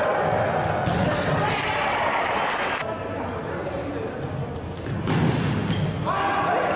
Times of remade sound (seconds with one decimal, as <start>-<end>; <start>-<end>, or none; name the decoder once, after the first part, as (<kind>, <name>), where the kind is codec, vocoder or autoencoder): none